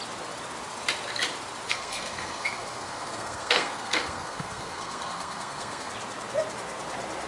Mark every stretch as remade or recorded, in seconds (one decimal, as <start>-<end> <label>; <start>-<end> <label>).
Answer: 0.0-1.7 recorded; 1.7-5.9 remade; 5.9-7.3 recorded